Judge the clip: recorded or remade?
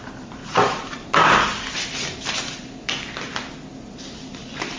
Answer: recorded